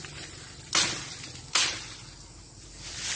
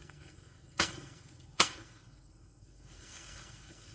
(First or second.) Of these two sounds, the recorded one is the first